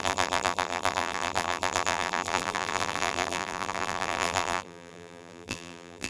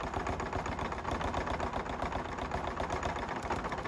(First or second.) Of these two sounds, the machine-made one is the first